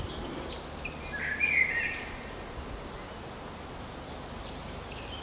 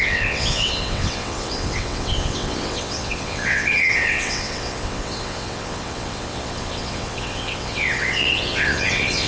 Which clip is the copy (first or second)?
second